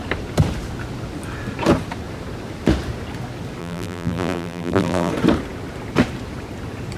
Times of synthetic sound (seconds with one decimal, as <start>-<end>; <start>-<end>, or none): 3.6-5.1